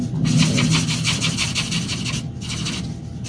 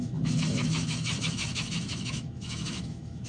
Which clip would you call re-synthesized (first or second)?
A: second